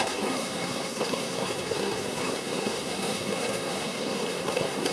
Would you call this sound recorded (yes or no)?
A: no